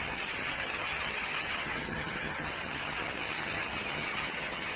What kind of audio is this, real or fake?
fake